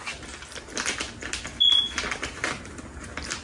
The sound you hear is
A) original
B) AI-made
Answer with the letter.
A